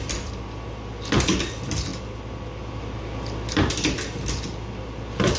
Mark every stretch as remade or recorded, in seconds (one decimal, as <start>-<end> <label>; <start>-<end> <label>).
0.0-5.4 recorded